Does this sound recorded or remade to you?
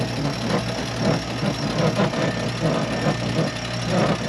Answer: recorded